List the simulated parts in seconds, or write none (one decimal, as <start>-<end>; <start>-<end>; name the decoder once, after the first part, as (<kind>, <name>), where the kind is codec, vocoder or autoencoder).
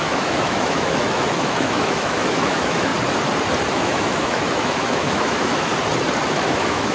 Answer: 0.0-2.9 (autoencoder, DAC-VAE); 3.7-5.7; 6.3-6.9